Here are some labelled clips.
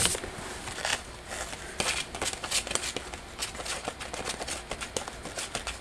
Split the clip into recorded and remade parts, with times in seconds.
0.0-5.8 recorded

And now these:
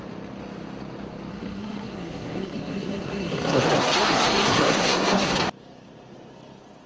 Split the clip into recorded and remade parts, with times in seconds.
0.0-1.3 recorded; 1.3-5.4 remade; 5.4-6.9 recorded

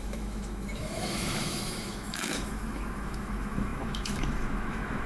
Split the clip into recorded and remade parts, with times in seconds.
0.0-5.1 remade

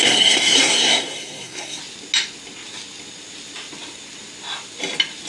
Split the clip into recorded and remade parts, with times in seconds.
0.0-1.8 remade; 1.8-5.3 recorded

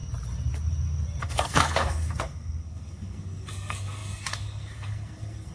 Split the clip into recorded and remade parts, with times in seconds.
0.0-1.2 recorded; 1.2-5.5 remade

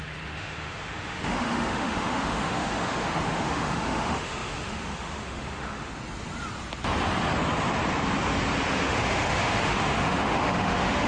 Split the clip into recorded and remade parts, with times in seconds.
0.0-5.9 remade; 5.9-8.7 recorded; 8.7-11.1 remade

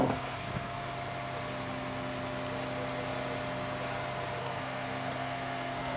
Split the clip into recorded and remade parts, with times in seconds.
0.0-0.8 remade; 0.8-4.4 recorded; 4.4-6.0 remade